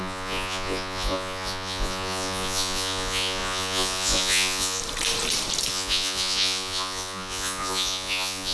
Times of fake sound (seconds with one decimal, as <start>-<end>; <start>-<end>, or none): 0.0-4.8; 5.7-8.5